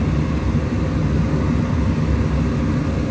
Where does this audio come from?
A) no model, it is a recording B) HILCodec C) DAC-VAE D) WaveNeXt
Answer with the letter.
A